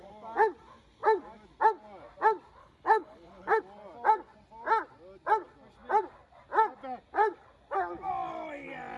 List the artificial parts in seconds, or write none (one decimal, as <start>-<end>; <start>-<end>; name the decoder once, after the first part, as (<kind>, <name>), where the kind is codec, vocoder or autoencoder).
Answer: 2.6-3.6 (codec, HILCodec)